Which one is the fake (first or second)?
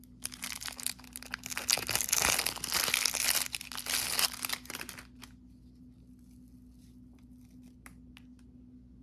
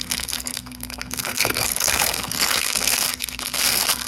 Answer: second